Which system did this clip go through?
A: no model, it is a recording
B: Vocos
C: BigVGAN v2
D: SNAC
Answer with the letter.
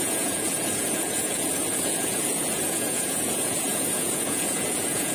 B